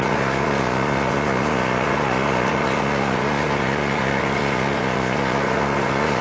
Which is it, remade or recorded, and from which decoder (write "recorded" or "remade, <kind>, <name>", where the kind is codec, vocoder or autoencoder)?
remade, vocoder, Vocos